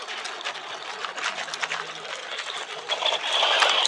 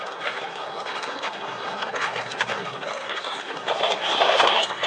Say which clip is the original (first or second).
first